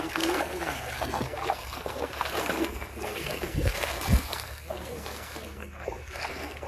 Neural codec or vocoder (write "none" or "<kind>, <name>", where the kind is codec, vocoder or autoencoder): codec, SNAC